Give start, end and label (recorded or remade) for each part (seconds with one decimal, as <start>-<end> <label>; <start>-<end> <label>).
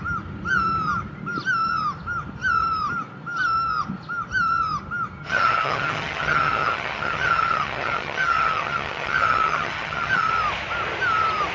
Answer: 0.0-5.2 recorded; 5.2-10.3 remade; 10.3-11.5 recorded